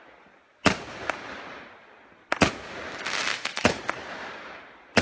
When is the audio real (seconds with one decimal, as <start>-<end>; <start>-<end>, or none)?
0.0-3.3; 3.8-5.0